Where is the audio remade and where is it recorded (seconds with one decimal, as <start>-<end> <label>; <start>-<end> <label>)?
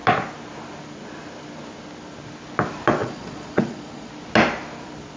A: 0.0-3.0 recorded; 3.0-4.1 remade; 4.1-5.2 recorded